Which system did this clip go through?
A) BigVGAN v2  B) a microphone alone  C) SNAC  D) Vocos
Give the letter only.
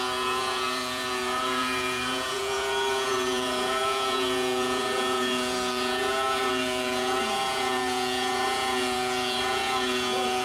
D